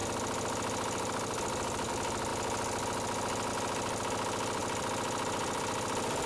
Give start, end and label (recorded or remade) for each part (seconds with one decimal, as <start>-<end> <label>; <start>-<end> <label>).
0.0-1.9 remade; 1.9-4.6 recorded; 4.6-5.6 remade; 5.6-6.3 recorded